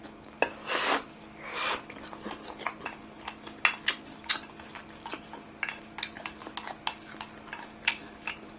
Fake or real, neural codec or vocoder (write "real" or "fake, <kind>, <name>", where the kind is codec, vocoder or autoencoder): real